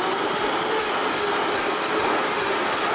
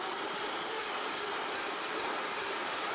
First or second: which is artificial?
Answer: second